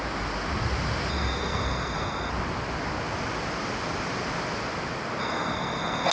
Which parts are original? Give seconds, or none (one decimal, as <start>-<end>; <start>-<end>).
0.0-1.1; 2.3-5.2